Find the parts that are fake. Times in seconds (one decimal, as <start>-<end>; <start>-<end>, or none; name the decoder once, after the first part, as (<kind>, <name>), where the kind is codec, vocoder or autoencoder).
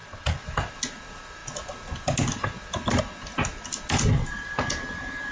0.0-0.7 (vocoder, BigVGAN v2)